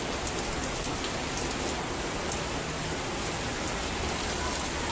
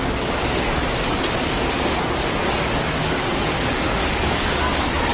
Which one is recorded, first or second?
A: first